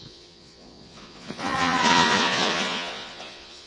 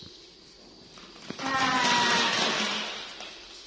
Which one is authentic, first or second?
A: second